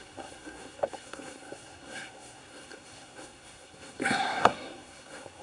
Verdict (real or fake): fake